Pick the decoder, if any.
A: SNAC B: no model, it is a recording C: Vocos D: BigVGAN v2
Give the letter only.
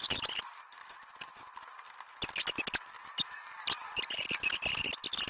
B